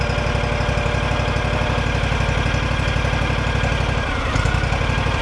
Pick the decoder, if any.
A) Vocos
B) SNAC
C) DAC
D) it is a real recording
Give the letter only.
D